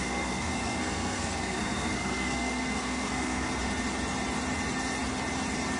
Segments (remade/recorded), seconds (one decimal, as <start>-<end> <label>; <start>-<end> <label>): 0.0-3.5 remade; 3.5-5.8 recorded